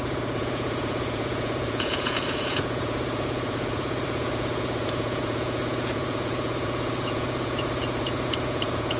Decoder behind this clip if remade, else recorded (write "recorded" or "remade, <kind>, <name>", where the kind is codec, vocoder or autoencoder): remade, vocoder, Vocos